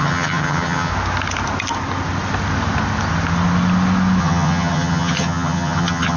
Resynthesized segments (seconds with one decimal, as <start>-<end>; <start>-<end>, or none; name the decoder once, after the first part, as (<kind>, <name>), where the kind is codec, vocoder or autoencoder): 0.0-0.9 (vocoder, HiFi-GAN); 4.2-6.2